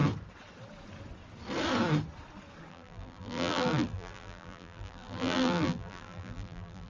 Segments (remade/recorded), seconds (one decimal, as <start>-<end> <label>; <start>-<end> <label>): 0.0-2.7 recorded; 2.7-6.9 remade